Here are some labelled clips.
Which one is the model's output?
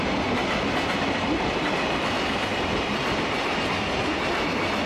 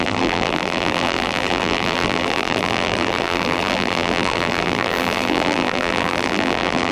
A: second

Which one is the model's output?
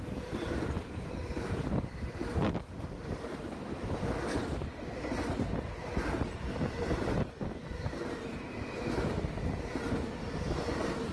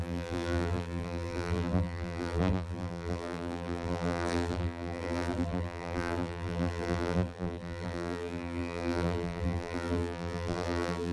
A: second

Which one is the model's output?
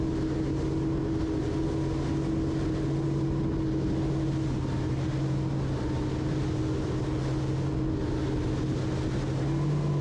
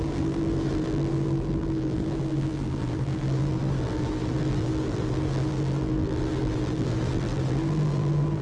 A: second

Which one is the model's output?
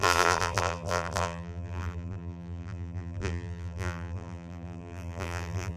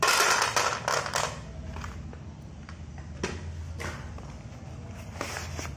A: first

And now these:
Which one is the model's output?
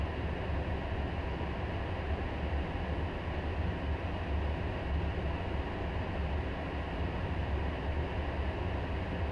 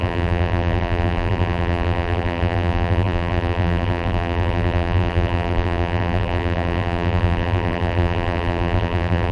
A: second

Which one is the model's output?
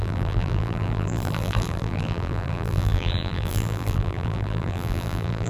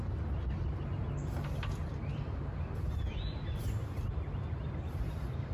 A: first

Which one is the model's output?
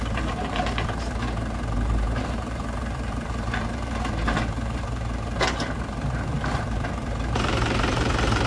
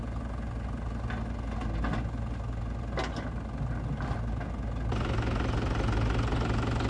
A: first